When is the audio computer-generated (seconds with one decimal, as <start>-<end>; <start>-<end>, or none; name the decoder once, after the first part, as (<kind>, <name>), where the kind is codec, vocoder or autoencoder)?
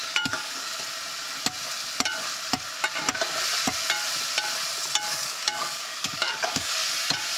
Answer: 0.0-0.7 (codec, DAC); 5.1-6.8